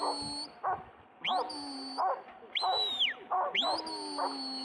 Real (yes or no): yes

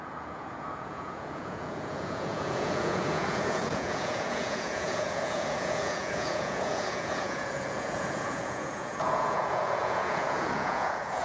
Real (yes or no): no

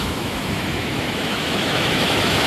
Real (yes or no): no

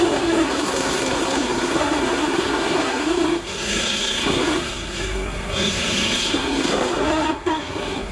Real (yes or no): no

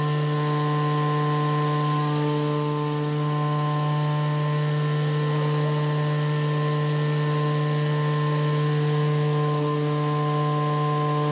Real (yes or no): yes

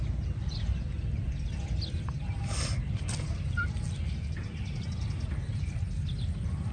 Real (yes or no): yes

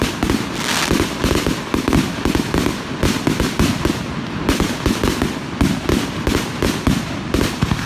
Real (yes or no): yes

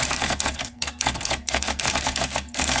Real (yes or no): no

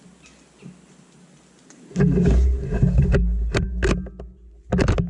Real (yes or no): yes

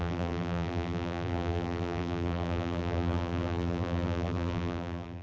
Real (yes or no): no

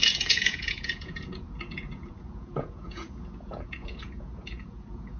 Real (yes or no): no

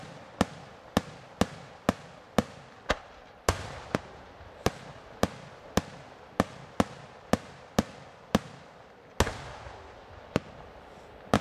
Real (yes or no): yes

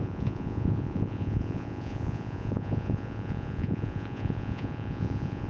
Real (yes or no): no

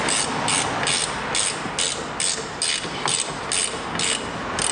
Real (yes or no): yes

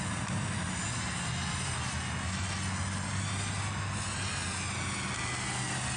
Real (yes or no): yes